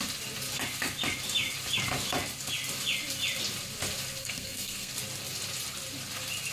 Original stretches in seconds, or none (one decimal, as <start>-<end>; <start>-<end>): 0.0-4.2; 4.9-6.5